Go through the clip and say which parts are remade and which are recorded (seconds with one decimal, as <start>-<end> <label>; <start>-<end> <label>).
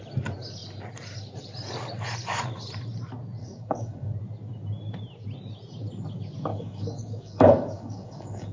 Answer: 0.0-3.4 recorded; 3.4-4.1 remade; 4.1-6.5 recorded; 6.5-8.5 remade